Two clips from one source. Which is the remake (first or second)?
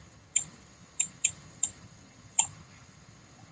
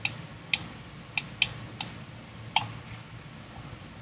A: first